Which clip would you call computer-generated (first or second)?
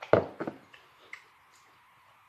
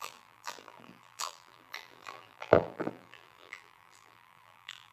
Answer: second